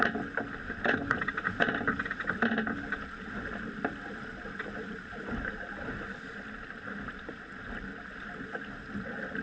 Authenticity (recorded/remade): recorded